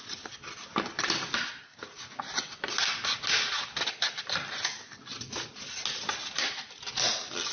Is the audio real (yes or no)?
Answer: yes